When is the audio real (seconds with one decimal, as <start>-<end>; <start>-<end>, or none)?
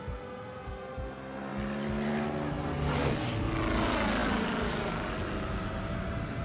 0.0-4.2; 5.3-6.4